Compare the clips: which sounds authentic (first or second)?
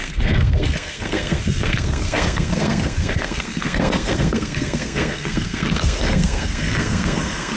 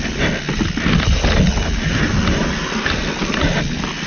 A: second